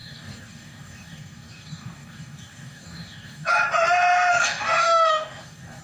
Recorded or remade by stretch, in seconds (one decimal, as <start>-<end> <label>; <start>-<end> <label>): 0.0-3.5 remade; 3.5-4.3 recorded; 4.3-5.8 remade